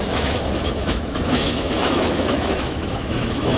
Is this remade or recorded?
remade